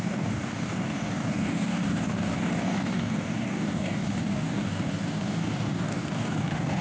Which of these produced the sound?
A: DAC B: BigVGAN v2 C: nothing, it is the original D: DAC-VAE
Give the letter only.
A